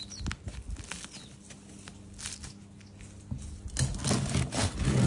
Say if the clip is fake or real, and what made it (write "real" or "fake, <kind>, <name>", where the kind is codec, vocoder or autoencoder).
real